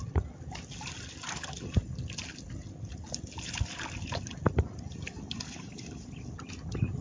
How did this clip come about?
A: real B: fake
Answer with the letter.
A